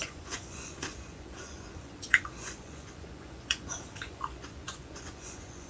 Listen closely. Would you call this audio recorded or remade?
remade